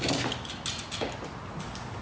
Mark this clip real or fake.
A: real